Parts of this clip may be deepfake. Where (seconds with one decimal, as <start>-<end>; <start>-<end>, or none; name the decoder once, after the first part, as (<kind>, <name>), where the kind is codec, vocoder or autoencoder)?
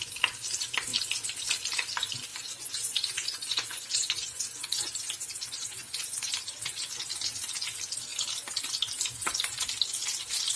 2.3-6.4 (vocoder, Vocos)